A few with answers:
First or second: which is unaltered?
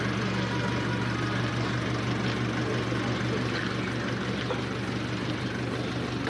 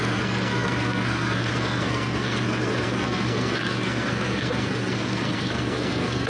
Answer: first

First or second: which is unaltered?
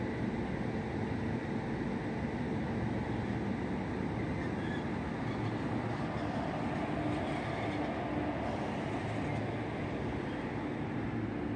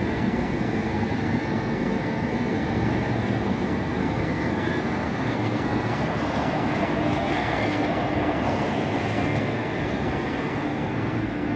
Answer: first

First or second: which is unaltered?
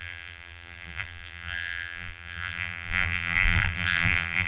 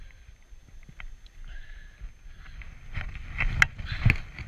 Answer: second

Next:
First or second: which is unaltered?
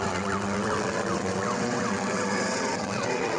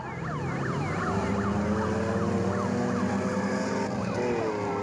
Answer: second